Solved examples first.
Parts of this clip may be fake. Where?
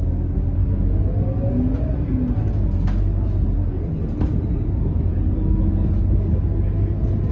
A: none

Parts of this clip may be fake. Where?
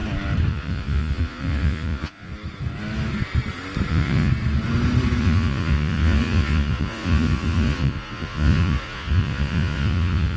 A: 0.5-2.3 (vocoder, Vocos); 3.9-4.3; 5.2-10.4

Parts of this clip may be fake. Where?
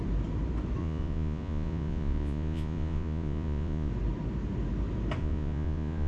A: 0.8-3.9 (vocoder, Vocos); 5.2-6.1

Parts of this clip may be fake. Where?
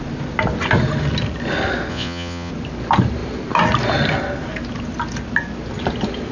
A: 1.9-2.5 (vocoder, Vocos)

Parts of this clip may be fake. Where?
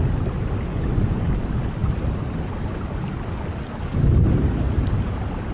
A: 0.7-1.3 (vocoder, Vocos)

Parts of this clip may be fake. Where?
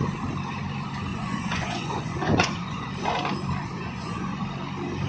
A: 1.1-2.9 (vocoder, Vocos); 3.6-4.4